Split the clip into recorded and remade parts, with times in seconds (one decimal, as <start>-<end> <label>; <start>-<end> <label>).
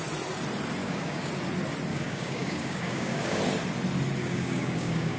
0.0-0.8 recorded; 0.8-1.3 remade; 1.3-1.9 recorded; 1.9-3.4 remade; 3.4-4.2 recorded; 4.2-5.2 remade